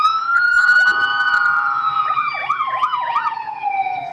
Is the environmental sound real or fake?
fake